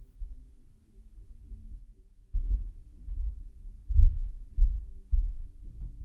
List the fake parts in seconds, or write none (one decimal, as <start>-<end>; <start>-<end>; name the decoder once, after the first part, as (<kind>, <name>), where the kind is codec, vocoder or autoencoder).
1.8-2.4 (vocoder, Vocos)